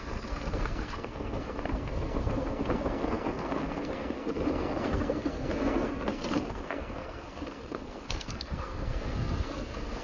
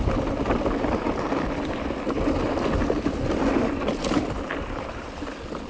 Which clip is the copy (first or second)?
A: first